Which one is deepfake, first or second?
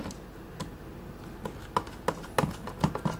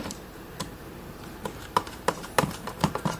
second